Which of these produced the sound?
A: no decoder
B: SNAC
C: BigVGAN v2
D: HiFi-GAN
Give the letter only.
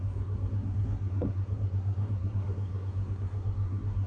B